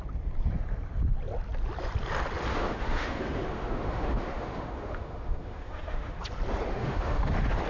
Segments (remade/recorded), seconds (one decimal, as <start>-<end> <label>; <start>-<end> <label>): 0.0-2.5 recorded; 2.5-6.2 remade; 6.2-6.7 recorded; 6.7-7.3 remade; 7.3-7.7 recorded